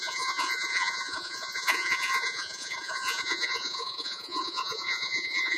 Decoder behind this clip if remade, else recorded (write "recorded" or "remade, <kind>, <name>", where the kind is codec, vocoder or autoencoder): remade, vocoder, Vocos